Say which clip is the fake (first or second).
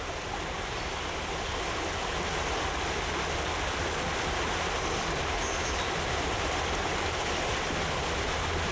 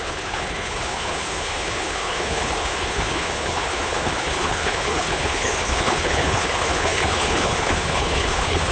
second